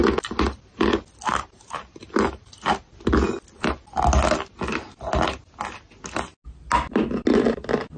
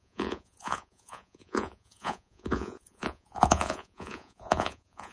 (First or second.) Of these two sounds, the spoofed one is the second